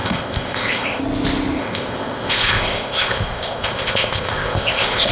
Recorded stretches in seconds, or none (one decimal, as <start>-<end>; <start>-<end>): 1.0-1.6